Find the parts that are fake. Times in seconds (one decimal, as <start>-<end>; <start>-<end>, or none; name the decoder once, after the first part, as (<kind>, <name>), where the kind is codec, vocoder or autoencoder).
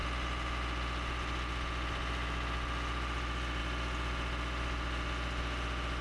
none